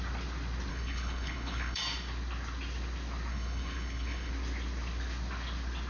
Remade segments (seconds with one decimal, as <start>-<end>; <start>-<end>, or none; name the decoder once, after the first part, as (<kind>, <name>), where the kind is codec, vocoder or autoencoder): 0.7-1.8 (codec, HILCodec); 3.3-4.3

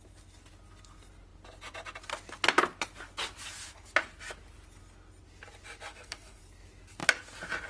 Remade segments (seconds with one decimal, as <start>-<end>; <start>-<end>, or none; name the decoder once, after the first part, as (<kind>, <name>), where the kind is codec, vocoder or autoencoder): 5.9-6.4 (codec, SNAC)

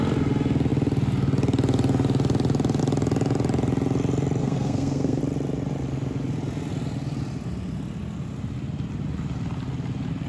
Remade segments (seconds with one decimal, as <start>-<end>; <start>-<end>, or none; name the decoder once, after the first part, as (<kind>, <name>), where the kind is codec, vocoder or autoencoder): 4.4-5.2 (codec, SNAC)

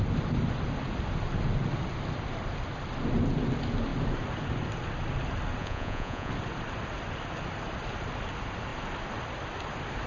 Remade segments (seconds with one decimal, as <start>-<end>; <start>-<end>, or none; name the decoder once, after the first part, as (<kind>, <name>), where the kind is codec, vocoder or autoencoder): 5.6-6.3 (vocoder, Vocos)

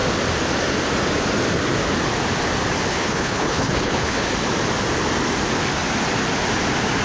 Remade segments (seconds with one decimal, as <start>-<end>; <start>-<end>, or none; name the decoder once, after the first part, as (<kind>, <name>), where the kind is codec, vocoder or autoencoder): 2.9-4.3 (codec, HILCodec)

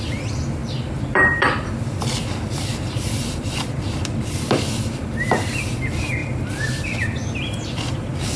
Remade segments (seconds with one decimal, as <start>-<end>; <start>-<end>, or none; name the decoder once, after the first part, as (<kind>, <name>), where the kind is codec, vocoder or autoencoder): 0.0-6.2 (vocoder, BigVGAN v2); 7.4-8.4

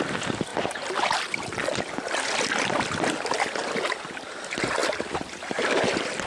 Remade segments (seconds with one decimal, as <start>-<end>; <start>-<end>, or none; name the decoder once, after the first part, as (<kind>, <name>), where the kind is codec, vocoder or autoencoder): none